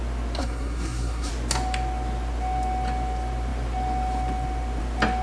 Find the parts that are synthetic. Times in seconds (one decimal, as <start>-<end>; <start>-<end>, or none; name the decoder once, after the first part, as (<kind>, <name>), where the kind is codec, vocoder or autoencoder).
0.4-1.3 (codec, SNAC)